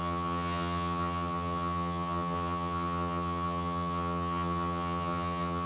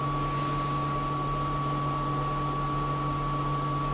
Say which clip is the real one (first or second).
second